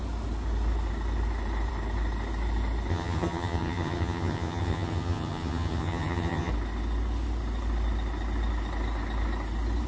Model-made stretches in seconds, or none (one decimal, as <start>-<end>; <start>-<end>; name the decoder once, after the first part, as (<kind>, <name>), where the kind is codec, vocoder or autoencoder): 2.9-6.5 (vocoder, HiFi-GAN)